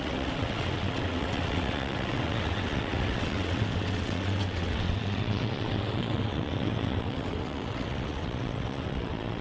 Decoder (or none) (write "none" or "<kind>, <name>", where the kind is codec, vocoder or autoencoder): vocoder, WaveNeXt